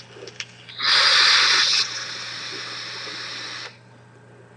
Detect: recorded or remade recorded